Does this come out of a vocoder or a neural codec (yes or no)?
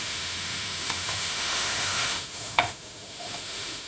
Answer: yes